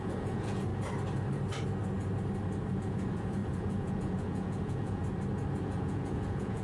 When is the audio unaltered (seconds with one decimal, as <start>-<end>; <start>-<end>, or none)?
0.7-2.7; 5.0-5.6